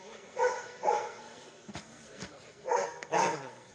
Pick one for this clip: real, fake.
fake